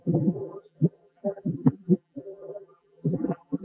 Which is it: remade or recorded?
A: remade